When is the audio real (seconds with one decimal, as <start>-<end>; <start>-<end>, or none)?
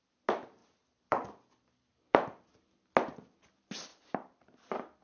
0.0-0.6; 2.4-3.9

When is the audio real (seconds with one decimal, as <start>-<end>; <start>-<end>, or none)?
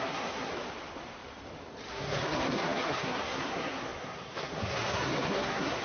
0.5-1.9